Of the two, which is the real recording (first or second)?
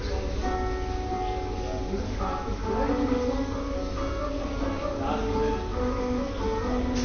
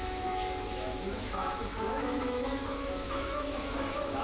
first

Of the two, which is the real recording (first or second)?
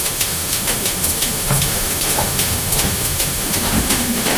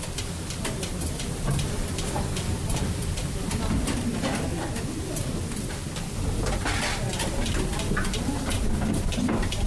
second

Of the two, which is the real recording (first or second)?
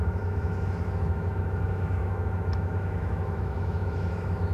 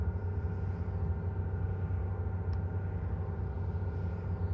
second